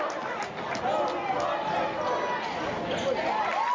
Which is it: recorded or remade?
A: recorded